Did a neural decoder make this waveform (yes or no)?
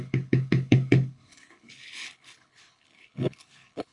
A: yes